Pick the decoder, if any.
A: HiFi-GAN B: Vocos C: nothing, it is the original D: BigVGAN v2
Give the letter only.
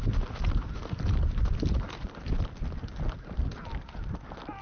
C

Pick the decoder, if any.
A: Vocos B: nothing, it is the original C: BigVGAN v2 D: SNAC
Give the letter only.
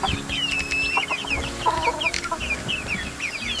B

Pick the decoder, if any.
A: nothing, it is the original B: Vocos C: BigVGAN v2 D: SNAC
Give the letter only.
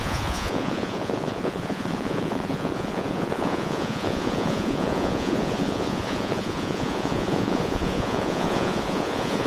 B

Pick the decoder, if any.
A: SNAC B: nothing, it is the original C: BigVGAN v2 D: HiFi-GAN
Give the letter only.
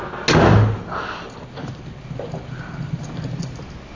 B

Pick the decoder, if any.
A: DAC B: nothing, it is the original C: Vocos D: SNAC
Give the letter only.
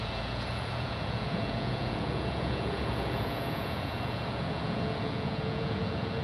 C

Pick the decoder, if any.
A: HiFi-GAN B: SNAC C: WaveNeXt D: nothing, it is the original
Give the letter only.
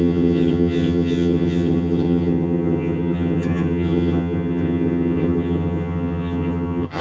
A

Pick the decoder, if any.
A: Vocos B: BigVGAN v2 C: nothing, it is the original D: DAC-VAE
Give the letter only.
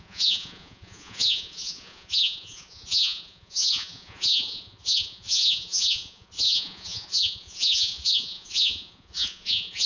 A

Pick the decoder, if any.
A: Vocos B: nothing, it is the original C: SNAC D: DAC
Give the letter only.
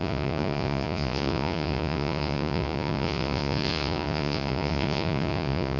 A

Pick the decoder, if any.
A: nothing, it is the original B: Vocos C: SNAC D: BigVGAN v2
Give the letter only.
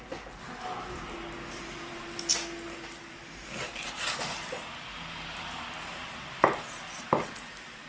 A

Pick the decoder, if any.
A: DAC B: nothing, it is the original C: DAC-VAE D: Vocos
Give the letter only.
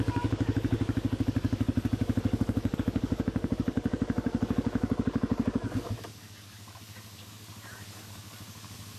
A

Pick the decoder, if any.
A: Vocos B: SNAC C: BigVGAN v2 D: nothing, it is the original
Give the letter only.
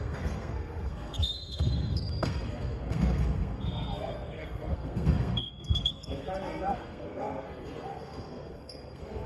B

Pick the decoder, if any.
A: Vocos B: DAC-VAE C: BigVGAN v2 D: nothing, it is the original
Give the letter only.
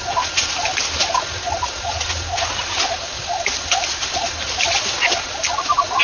D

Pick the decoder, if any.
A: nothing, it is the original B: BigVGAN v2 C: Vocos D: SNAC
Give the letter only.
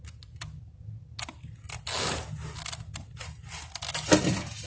A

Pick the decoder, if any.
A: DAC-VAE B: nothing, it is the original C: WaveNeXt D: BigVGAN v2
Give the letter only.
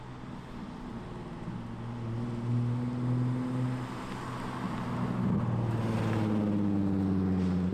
B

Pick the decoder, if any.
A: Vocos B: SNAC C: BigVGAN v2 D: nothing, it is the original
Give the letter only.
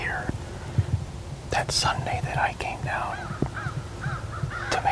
D